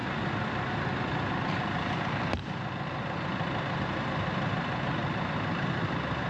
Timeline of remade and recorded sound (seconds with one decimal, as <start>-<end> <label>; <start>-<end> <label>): 0.0-6.3 recorded